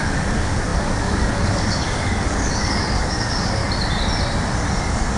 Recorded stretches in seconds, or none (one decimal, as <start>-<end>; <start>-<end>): 3.6-4.8